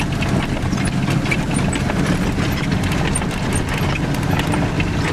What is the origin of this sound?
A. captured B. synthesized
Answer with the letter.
A